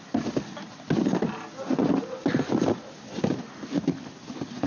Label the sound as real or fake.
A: real